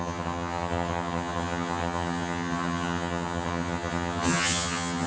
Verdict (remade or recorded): remade